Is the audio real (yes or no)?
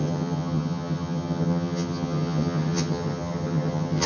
no